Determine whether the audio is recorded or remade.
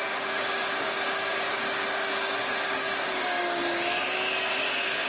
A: remade